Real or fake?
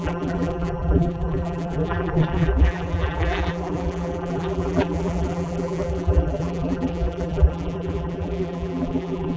fake